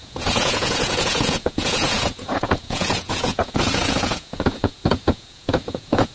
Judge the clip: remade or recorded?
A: remade